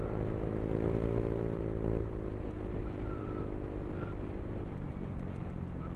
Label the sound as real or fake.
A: real